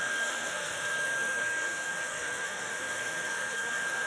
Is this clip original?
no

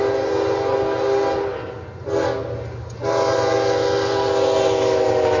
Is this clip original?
yes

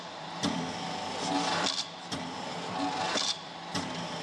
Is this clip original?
no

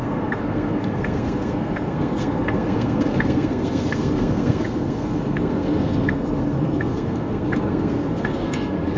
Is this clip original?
no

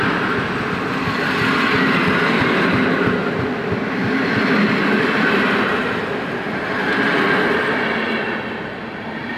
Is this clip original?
yes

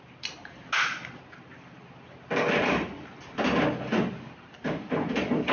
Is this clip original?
yes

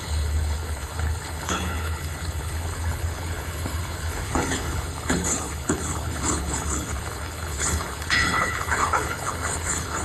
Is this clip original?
no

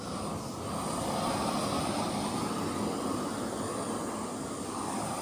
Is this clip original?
yes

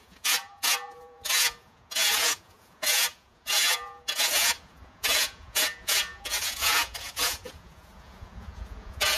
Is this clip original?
no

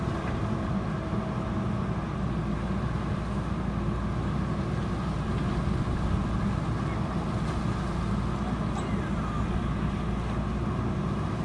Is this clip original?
yes